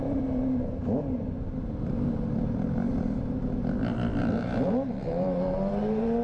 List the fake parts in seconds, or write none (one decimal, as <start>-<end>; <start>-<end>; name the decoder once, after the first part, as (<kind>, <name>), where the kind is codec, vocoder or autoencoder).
0.0-0.8 (vocoder, BigVGAN v2); 4.2-6.2